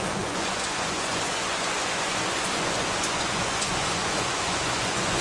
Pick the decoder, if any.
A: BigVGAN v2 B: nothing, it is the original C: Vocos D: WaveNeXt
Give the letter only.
C